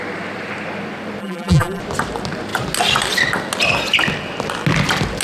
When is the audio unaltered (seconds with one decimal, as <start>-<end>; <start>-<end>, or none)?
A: 0.0-1.2; 1.8-5.2